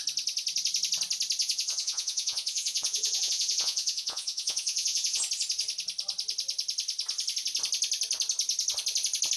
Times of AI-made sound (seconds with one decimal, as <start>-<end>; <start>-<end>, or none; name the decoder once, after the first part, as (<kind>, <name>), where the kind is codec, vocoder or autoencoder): 1.4-5.2 (vocoder, Vocos)